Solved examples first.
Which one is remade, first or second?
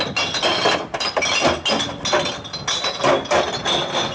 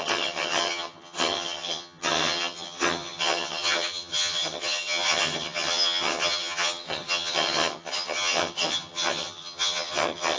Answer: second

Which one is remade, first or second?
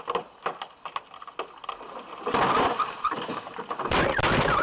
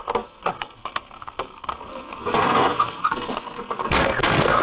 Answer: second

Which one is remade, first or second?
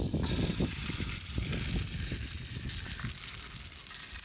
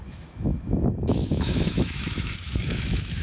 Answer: second